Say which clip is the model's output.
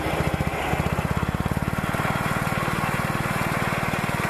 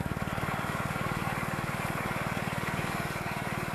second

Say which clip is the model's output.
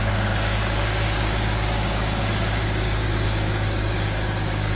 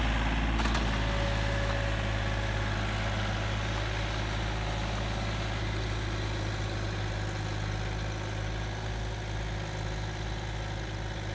first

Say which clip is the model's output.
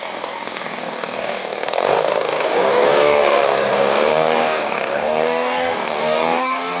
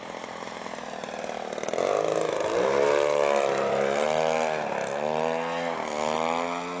first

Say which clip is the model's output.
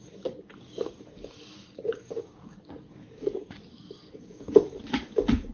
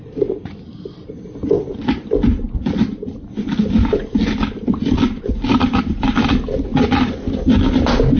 first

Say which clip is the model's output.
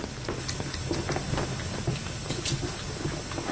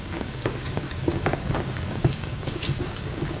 second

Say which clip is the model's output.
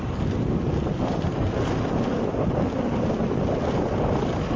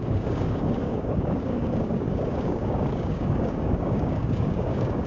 second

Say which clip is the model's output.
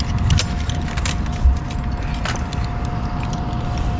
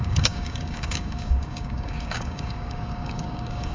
second